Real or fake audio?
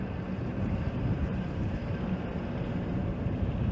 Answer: fake